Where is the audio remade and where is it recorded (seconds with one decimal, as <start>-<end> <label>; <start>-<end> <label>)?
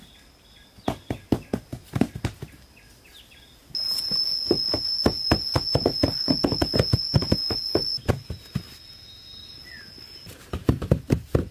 0.0-11.5 recorded